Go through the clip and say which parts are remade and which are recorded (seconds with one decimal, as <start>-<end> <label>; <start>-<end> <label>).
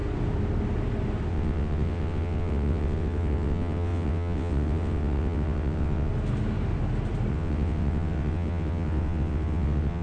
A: 0.0-1.3 recorded; 1.3-6.1 remade; 6.1-7.3 recorded; 7.3-10.0 remade